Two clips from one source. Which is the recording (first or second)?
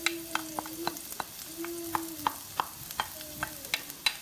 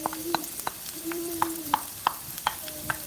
first